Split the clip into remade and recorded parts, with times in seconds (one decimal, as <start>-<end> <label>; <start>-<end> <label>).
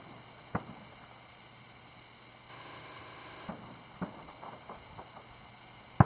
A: 0.0-2.5 recorded; 2.5-3.5 remade; 3.5-6.1 recorded